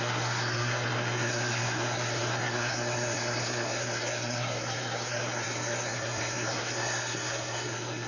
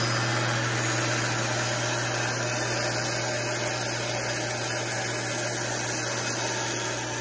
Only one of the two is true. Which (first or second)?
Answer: second